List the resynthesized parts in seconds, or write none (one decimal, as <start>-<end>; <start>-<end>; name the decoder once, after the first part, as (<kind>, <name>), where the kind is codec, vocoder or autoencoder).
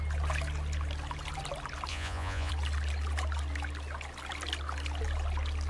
1.9-2.5 (vocoder, Vocos)